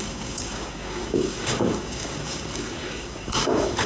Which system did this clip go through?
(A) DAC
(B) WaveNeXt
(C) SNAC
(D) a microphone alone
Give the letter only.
A